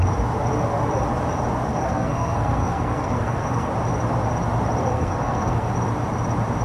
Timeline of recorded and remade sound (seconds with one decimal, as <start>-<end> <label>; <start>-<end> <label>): 0.0-1.7 recorded; 1.7-3.7 remade; 3.7-4.8 recorded; 4.8-5.7 remade; 5.7-6.6 recorded